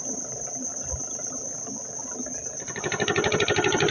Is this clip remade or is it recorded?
recorded